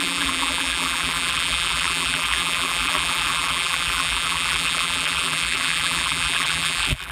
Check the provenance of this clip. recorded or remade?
remade